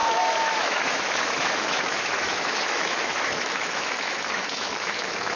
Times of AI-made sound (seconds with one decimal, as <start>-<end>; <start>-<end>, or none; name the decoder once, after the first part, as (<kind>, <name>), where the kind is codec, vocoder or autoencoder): 0.0-5.3 (autoencoder, DAC-VAE)